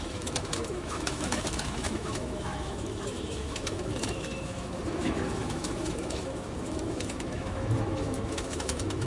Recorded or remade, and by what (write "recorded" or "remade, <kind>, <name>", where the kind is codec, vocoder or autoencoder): remade, autoencoder, DAC-VAE